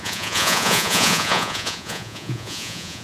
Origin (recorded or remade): remade